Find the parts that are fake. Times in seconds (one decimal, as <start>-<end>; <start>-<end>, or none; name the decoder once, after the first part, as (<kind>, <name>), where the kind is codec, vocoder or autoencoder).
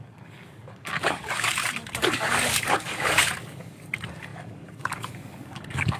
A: 0.0-6.0 (codec, DAC)